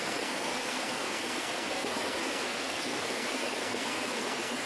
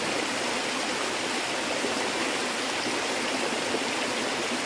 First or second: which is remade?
first